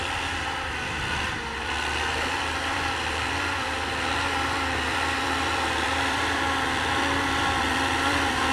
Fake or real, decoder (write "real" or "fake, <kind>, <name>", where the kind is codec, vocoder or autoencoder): fake, vocoder, BigVGAN v2